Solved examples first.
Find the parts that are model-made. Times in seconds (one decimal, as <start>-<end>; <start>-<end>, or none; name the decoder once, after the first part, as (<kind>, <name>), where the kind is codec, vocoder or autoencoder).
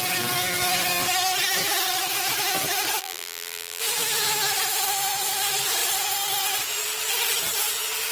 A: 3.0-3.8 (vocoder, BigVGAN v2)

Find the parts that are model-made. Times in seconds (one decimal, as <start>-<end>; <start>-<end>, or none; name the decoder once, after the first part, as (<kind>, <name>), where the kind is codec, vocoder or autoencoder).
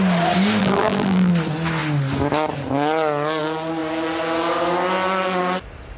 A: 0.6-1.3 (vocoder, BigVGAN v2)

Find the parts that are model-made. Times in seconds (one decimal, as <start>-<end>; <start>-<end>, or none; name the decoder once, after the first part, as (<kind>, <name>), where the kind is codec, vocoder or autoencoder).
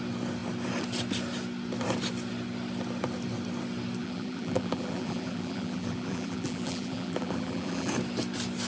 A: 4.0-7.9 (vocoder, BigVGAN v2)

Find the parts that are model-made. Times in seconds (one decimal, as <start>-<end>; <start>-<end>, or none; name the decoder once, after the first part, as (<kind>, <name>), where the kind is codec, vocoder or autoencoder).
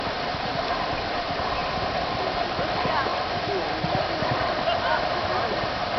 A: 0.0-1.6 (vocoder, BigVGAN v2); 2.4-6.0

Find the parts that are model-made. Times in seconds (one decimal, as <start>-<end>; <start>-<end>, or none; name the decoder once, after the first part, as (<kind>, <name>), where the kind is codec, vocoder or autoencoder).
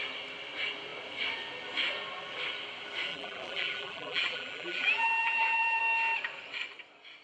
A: 3.1-5.8 (vocoder, BigVGAN v2)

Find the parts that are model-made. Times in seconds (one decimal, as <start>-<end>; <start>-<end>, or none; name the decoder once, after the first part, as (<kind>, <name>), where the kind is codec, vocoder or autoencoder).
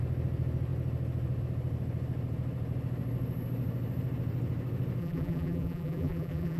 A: 5.0-6.6 (vocoder, BigVGAN v2)